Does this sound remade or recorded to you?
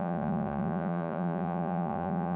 remade